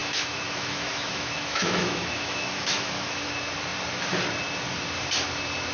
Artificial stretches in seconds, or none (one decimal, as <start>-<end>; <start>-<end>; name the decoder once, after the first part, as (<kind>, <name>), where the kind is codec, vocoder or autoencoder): 0.0-3.3 (autoencoder, DAC-VAE)